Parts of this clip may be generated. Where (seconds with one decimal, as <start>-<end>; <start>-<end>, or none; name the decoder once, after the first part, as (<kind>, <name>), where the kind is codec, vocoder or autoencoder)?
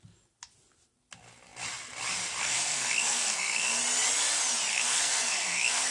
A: 2.4-3.8 (codec, SNAC); 4.7-5.9